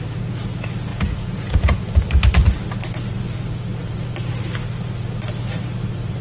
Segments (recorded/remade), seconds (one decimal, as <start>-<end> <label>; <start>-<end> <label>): 0.0-0.9 recorded; 0.9-1.9 remade; 1.9-6.2 recorded